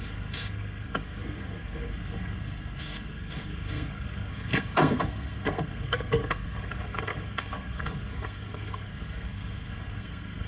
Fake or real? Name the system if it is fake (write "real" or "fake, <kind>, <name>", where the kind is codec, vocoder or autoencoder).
fake, codec, SNAC